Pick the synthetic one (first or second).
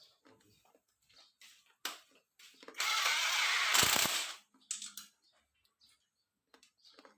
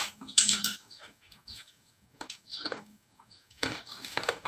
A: second